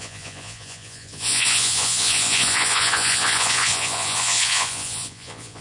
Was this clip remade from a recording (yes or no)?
yes